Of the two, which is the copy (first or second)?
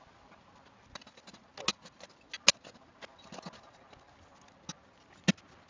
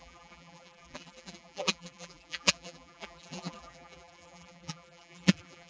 second